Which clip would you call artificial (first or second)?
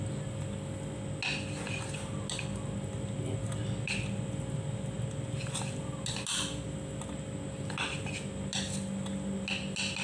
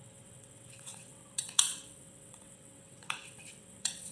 second